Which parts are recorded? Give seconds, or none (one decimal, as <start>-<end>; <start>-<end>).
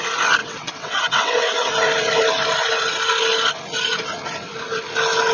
0.0-0.4; 1.7-5.3